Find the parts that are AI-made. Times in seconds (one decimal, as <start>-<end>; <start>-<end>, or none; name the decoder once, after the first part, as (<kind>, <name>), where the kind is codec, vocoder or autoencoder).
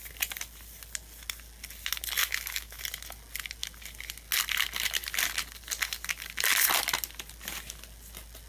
2.2-2.8 (autoencoder, DAC-VAE)